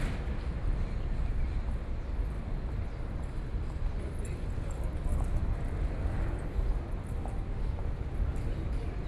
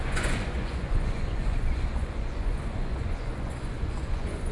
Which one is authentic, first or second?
first